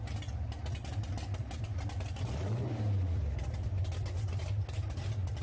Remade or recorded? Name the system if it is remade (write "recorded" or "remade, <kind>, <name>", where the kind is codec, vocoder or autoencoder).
recorded